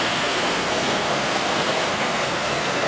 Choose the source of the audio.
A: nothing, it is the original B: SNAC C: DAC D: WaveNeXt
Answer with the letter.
B